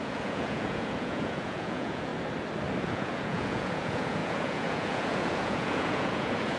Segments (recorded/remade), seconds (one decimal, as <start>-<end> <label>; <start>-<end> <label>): 0.0-2.1 remade; 2.1-2.8 recorded; 2.8-6.6 remade